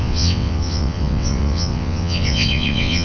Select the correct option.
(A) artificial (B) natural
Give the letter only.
A